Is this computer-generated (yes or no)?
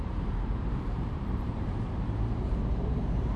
yes